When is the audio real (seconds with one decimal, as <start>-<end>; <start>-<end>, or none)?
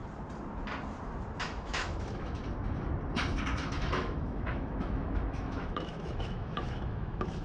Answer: 0.0-1.4; 2.4-3.5